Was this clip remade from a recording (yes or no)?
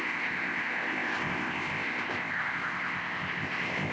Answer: yes